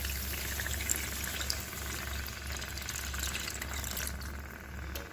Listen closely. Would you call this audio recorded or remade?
recorded